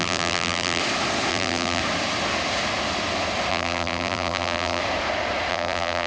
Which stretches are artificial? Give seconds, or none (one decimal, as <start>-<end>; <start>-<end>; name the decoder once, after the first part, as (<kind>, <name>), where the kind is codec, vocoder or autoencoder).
0.0-0.8 (vocoder, BigVGAN v2); 1.3-1.8; 3.5-4.8; 5.5-6.1